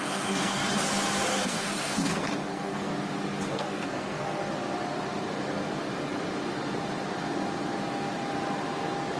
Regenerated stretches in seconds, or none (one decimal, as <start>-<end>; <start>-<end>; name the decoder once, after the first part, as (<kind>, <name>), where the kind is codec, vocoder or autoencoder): 0.0-0.6 (codec, SNAC); 1.3-2.9; 3.5-4.4